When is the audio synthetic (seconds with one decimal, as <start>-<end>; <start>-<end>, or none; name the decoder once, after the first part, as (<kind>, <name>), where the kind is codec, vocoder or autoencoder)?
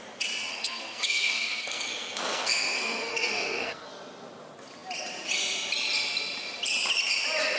0.5-3.9 (codec, SNAC)